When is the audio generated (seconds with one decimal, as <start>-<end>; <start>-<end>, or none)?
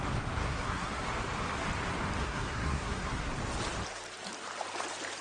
0.4-1.1; 2.2-3.3